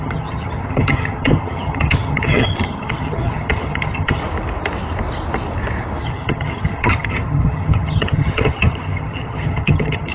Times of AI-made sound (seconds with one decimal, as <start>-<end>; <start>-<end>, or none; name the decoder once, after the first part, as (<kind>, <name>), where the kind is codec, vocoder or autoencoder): 0.0-4.2 (vocoder, HiFi-GAN); 6.0-10.1